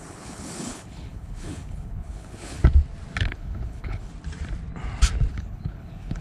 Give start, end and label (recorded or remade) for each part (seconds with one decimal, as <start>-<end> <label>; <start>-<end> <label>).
0.0-2.6 remade; 2.6-3.2 recorded; 3.2-4.1 remade; 4.1-5.3 recorded; 5.3-6.2 remade